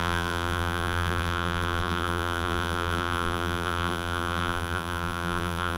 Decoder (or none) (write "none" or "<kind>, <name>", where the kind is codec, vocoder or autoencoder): vocoder, BigVGAN v2